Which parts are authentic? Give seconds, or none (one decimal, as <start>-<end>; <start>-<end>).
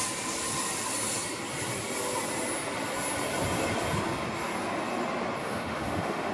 0.0-5.4